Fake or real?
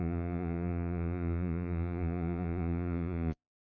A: fake